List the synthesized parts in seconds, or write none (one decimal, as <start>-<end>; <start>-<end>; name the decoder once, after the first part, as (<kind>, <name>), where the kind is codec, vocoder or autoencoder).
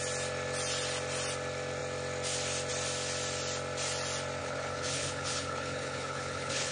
4.4-6.7 (codec, HILCodec)